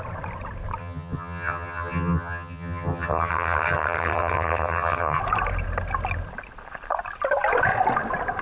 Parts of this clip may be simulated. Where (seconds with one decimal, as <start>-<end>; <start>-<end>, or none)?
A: 0.8-5.2